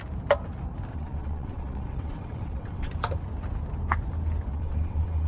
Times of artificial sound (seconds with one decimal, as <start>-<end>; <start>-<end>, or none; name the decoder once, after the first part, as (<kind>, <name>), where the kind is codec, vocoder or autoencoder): 0.9-2.9 (vocoder, WaveNeXt); 4.5-5.3